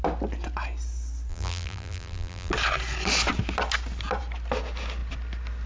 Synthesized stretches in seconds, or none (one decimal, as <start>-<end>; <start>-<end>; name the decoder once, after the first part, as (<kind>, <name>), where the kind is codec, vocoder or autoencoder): 1.3-2.5 (vocoder, BigVGAN v2)